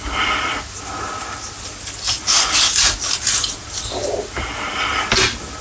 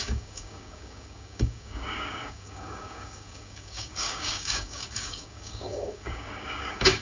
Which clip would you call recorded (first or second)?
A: first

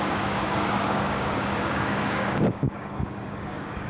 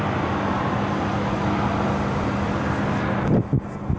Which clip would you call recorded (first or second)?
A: second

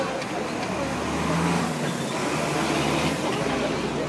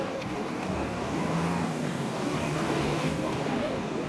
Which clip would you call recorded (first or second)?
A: first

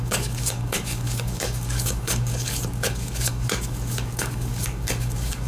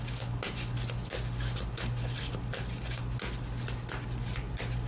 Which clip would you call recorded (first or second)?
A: second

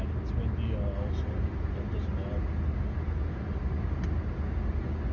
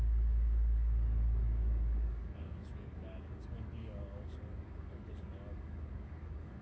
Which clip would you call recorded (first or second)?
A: first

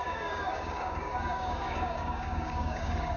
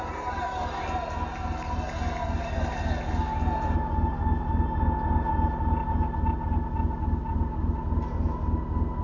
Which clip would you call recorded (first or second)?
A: second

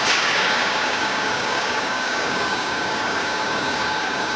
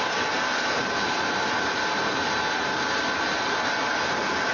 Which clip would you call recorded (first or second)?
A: second